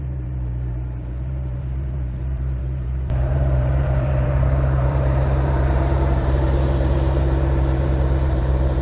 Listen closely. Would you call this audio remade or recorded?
remade